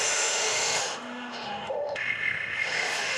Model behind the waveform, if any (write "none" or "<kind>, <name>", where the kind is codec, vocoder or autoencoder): autoencoder, DAC-VAE